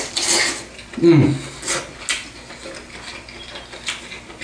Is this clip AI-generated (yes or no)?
no